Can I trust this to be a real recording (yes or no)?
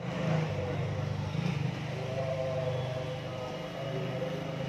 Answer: yes